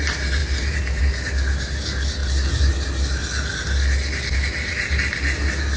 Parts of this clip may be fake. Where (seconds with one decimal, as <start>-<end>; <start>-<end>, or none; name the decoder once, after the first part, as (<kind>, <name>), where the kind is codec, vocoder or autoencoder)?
none